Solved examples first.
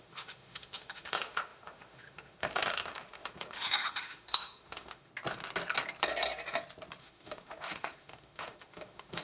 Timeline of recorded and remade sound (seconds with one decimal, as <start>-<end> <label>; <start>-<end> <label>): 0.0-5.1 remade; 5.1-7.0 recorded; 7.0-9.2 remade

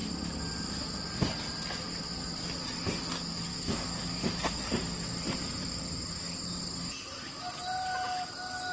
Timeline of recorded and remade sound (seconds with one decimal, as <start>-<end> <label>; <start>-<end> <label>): 0.0-3.5 recorded; 3.5-4.4 remade; 4.4-8.7 recorded

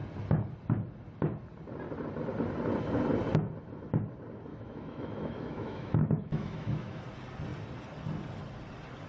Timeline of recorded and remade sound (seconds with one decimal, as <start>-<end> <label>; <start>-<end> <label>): 0.0-4.5 recorded; 4.5-7.0 remade; 7.0-9.1 recorded